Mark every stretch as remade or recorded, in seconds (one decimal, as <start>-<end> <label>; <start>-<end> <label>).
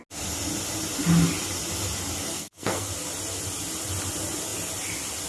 0.0-2.3 recorded; 2.3-2.9 remade; 2.9-5.3 recorded